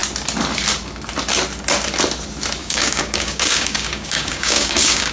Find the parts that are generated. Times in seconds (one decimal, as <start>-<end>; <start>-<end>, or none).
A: 2.6-5.1